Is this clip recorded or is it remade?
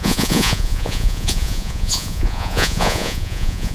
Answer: remade